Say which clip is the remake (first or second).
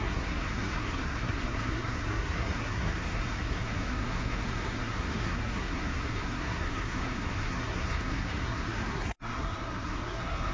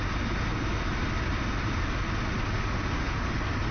first